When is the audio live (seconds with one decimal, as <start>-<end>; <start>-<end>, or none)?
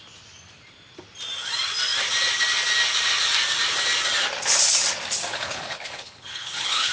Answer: 0.0-5.3